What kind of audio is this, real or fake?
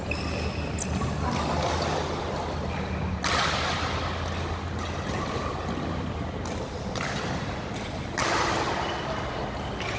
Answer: real